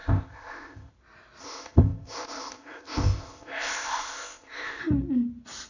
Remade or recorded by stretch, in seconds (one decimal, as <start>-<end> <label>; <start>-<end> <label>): 0.0-0.9 remade; 0.9-1.4 recorded; 1.4-4.8 remade; 4.8-5.7 recorded